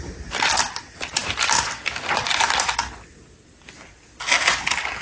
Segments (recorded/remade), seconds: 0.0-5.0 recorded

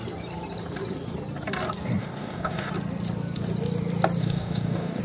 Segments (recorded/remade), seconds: 0.0-2.0 recorded; 2.0-2.7 remade; 2.7-4.2 recorded; 4.2-5.0 remade

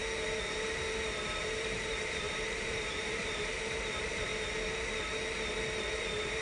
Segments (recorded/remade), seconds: 0.0-1.4 recorded; 1.4-4.3 remade; 4.3-6.0 recorded; 6.0-6.4 remade

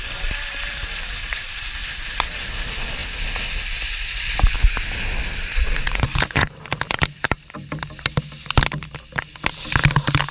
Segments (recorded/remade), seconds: 0.0-5.4 recorded; 5.4-6.5 remade; 6.5-10.3 recorded

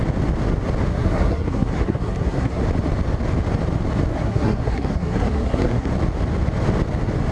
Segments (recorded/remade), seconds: 0.0-0.9 recorded; 0.9-2.6 remade; 2.6-4.1 recorded; 4.1-5.9 remade; 5.9-7.3 recorded

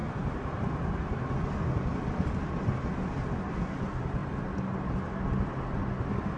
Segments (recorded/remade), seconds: 0.0-6.4 recorded

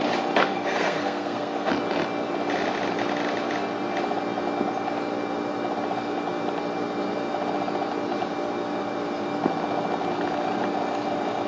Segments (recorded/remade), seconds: 0.0-0.4 recorded; 0.4-1.7 remade; 1.7-11.5 recorded